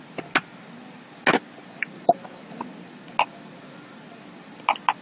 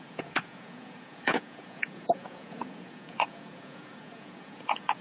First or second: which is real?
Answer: first